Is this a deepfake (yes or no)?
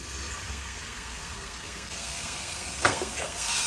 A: yes